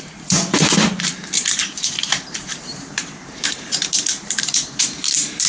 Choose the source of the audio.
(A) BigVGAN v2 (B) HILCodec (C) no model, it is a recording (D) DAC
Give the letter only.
A